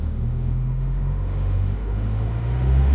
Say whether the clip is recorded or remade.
remade